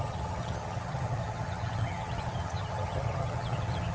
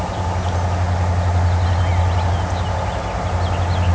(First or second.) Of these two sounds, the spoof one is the first